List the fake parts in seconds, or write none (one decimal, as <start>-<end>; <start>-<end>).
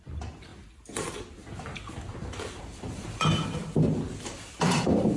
0.0-0.5; 2.6-3.6; 4.3-5.2